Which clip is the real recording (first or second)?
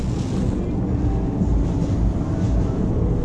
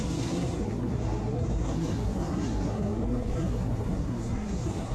first